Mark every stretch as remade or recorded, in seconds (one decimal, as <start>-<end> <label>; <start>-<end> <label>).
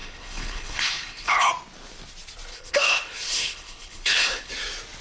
0.0-1.5 remade; 1.5-2.5 recorded; 2.5-4.5 remade; 4.5-5.0 recorded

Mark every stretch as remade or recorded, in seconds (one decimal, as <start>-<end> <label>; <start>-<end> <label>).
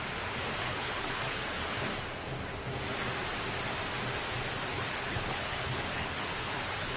0.0-0.6 recorded; 0.6-1.8 remade; 1.8-4.7 recorded; 4.7-7.0 remade